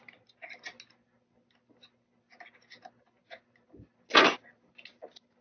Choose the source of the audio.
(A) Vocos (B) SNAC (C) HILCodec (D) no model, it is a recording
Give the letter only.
D